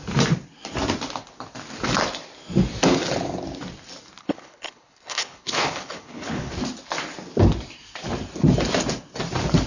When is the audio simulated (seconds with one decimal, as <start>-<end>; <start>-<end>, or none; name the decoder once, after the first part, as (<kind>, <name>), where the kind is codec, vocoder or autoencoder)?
4.2-6.5 (codec, HILCodec)